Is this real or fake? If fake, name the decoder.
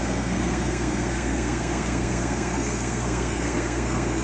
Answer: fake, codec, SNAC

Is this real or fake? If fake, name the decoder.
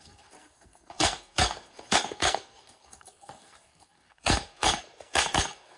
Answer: fake, codec, SNAC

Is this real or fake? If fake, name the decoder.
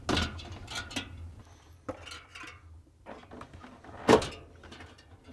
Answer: real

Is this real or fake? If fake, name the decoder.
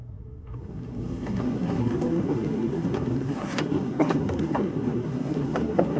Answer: fake, codec, SNAC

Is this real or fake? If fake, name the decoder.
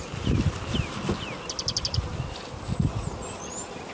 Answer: real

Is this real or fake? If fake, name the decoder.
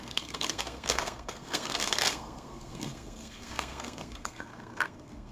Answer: fake, codec, SNAC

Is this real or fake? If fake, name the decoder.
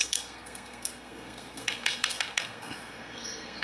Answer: fake, codec, SNAC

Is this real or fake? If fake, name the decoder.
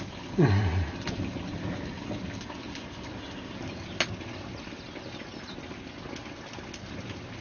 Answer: real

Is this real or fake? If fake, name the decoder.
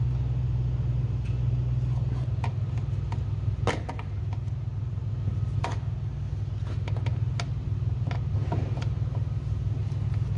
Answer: real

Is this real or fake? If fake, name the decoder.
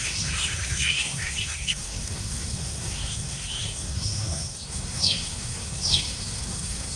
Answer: fake, codec, SNAC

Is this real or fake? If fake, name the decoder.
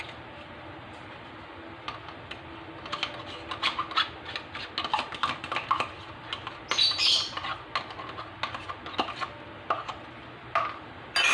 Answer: real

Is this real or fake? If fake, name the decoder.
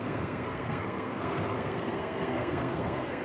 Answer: fake, codec, SNAC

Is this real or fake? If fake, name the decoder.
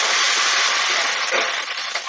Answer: real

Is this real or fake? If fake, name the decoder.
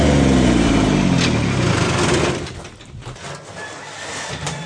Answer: real